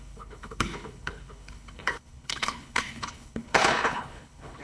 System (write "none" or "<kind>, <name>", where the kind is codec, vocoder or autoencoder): codec, HILCodec